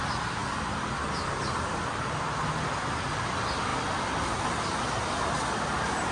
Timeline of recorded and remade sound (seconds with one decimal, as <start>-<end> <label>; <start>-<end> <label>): 0.0-6.1 recorded